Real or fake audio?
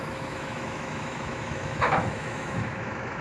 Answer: fake